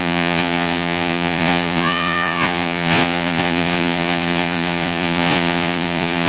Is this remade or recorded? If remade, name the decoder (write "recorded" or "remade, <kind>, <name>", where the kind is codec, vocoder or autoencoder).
remade, vocoder, Vocos